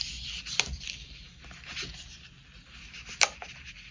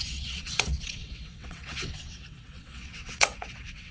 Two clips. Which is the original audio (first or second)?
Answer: first